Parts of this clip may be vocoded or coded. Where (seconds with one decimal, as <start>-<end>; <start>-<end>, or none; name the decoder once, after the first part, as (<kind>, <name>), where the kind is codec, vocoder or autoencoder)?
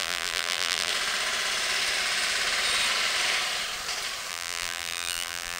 0.0-0.9 (vocoder, BigVGAN v2); 4.3-5.6